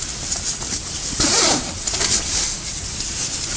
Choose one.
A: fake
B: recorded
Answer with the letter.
B